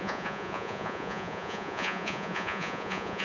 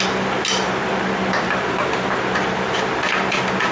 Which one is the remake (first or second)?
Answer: first